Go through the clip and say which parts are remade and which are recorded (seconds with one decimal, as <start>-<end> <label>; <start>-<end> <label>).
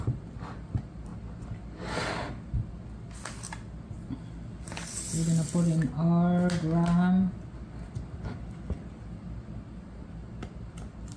0.0-11.2 recorded